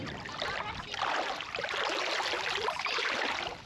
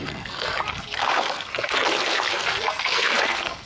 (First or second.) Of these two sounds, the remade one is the second